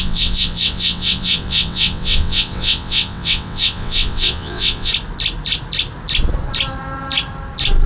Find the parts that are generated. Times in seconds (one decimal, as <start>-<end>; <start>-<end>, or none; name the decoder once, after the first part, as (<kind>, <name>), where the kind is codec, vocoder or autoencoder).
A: 0.0-4.9 (vocoder, WaveNeXt)